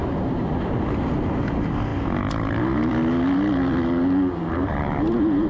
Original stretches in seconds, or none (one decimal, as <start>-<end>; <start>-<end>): 1.1-4.6